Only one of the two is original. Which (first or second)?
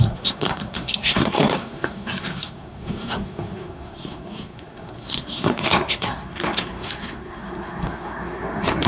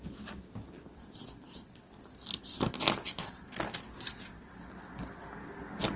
second